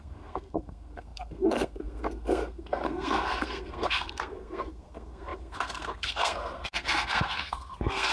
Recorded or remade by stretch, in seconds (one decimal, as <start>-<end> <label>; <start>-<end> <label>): 0.0-8.1 remade